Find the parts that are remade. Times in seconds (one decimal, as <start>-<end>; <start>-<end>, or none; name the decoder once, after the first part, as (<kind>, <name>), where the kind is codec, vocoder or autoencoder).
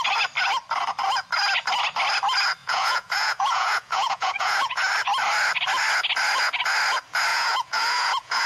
2.6-4.9 (vocoder, Vocos); 7.3-8.5